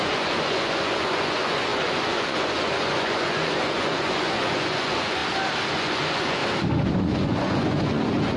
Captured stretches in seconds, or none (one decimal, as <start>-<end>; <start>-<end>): 5.2-5.7; 6.4-7.0